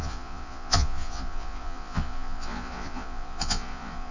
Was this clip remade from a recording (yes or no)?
yes